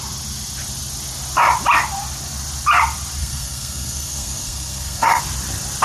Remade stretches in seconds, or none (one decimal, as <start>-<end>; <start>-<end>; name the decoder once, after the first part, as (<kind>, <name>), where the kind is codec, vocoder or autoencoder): 3.2-5.2 (codec, SNAC)